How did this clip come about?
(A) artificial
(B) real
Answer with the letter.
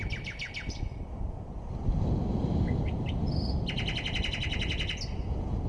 B